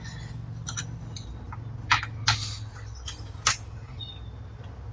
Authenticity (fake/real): real